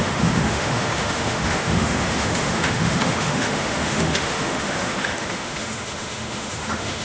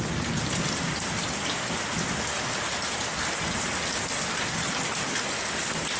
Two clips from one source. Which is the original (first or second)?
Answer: second